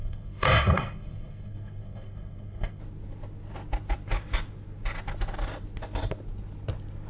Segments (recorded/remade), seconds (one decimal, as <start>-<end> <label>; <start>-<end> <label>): 0.0-2.8 remade; 2.8-7.1 recorded